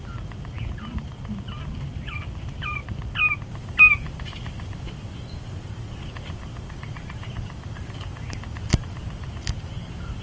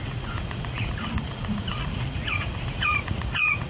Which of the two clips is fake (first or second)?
second